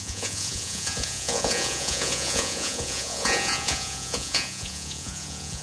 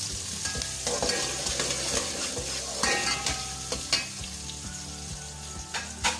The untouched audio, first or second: second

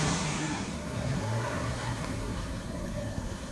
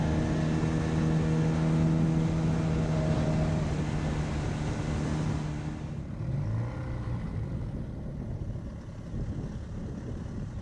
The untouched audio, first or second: second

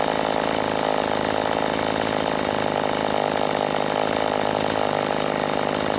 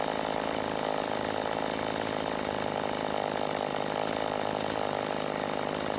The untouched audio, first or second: first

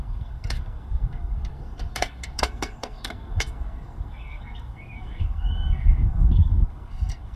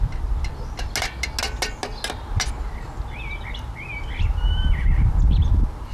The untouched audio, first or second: second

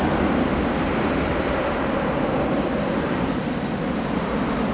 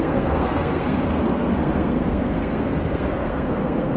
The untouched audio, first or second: first